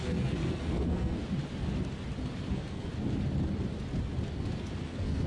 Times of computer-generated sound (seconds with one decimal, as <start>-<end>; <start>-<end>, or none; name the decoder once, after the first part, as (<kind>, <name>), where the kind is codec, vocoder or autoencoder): 0.0-1.2 (codec, SNAC); 2.5-2.9; 4.8-5.3